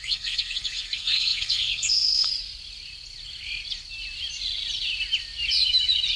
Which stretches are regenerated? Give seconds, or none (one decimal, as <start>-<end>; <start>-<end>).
0.0-2.3